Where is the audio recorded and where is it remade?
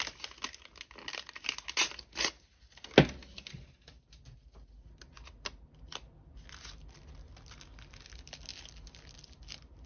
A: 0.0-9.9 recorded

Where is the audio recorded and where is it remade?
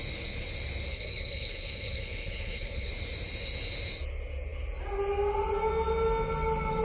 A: 0.0-0.9 recorded; 0.9-2.9 remade; 2.9-6.8 recorded